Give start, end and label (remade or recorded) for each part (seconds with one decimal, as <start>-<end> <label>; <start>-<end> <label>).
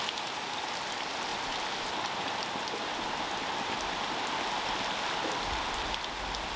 0.0-6.6 recorded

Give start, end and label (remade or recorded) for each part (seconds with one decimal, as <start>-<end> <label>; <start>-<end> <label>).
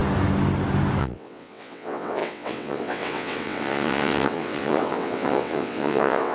0.0-1.0 recorded; 1.0-6.3 remade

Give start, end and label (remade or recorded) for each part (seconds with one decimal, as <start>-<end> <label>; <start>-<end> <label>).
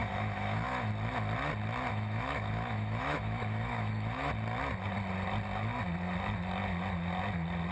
0.0-0.9 remade; 0.9-1.9 recorded; 1.9-4.3 remade; 4.3-7.7 recorded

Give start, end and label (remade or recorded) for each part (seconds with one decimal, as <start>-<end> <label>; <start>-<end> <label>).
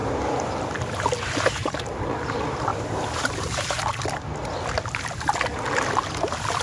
0.0-2.7 recorded; 2.7-4.0 remade; 4.0-6.6 recorded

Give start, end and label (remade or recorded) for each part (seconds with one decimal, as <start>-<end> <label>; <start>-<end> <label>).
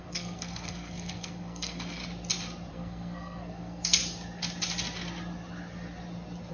0.0-2.0 remade; 2.0-2.7 recorded; 2.7-4.0 remade; 4.0-6.5 recorded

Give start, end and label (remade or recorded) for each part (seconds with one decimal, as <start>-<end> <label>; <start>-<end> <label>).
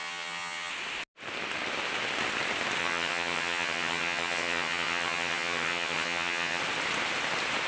0.0-0.7 remade; 0.7-2.8 recorded; 2.8-6.6 remade; 6.6-7.7 recorded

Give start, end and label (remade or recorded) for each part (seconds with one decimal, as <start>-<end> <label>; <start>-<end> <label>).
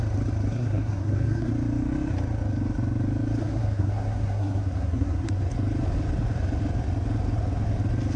0.0-0.5 recorded; 0.5-1.5 remade; 1.5-3.4 recorded; 3.4-5.4 remade; 5.4-8.2 recorded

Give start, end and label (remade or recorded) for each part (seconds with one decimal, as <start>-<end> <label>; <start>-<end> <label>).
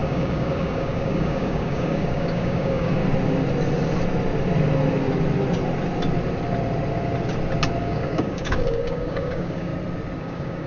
0.0-3.0 remade; 3.0-7.8 recorded; 7.8-9.7 remade; 9.7-10.2 recorded; 10.2-10.7 remade